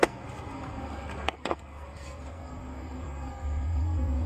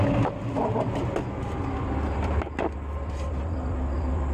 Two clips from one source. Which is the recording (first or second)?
second